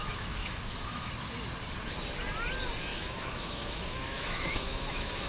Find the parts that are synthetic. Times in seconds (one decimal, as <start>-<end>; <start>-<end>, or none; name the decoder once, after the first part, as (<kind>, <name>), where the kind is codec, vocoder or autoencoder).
0.0-1.1 (autoencoder, DAC-VAE); 2.9-5.3